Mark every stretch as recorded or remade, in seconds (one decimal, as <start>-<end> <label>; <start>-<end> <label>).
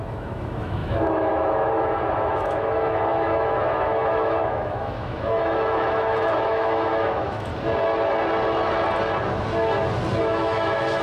0.0-7.5 remade; 7.5-10.2 recorded; 10.2-11.0 remade